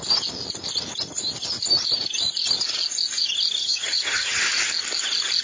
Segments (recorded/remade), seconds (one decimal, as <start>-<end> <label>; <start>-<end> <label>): 0.0-3.6 recorded; 3.6-4.4 remade; 4.4-5.4 recorded